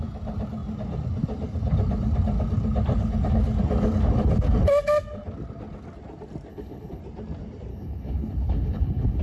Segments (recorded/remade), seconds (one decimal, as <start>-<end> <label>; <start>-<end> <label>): 0.0-6.5 recorded; 6.5-7.0 remade; 7.0-7.7 recorded; 7.7-9.2 remade

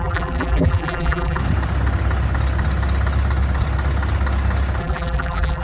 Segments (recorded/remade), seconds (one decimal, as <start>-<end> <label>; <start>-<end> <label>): 0.0-1.4 remade; 1.4-4.8 recorded; 4.8-5.6 remade

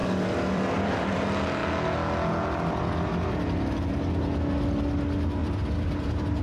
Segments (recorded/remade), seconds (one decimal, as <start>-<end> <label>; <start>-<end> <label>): 0.0-1.2 remade; 1.2-5.4 recorded; 5.4-6.4 remade

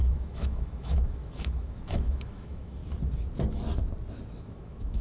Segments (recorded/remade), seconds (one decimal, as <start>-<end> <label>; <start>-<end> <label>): 0.0-2.8 remade; 2.8-4.3 recorded; 4.3-5.0 remade

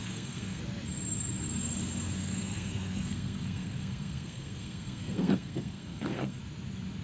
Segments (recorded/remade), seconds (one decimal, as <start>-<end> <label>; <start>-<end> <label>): 0.0-0.6 remade; 0.6-2.2 recorded; 2.2-6.4 remade; 6.4-7.0 recorded

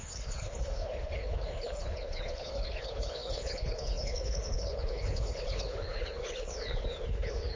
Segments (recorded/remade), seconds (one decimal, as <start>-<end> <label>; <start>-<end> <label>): 0.0-7.6 remade

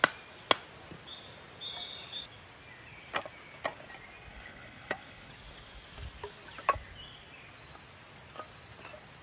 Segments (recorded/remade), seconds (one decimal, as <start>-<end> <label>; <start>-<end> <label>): 0.0-4.3 recorded; 4.3-5.3 remade; 5.3-9.2 recorded